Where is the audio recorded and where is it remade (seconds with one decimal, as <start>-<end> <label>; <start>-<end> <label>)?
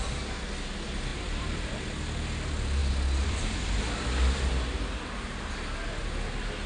0.0-1.1 recorded; 1.1-1.8 remade; 1.8-2.8 recorded; 2.8-3.9 remade; 3.9-6.7 recorded